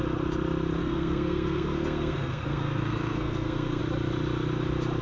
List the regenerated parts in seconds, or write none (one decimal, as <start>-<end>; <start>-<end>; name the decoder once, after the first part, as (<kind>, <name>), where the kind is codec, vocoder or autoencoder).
0.8-3.8 (codec, SNAC)